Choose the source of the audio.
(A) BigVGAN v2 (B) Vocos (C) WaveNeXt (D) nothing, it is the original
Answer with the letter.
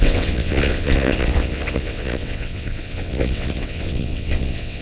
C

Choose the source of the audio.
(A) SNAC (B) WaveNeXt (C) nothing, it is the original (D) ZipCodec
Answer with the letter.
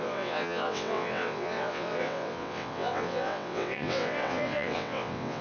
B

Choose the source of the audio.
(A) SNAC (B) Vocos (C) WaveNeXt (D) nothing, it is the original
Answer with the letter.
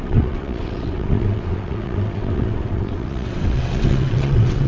C